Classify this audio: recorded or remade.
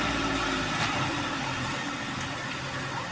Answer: remade